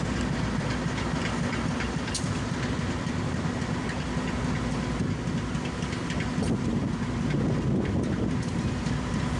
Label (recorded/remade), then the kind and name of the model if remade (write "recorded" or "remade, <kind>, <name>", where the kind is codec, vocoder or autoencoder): recorded